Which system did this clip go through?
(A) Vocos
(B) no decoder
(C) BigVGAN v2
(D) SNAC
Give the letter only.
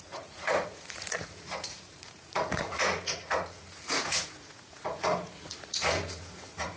A